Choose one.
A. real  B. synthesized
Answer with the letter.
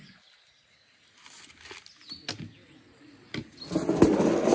A